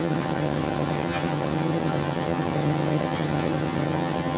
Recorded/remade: remade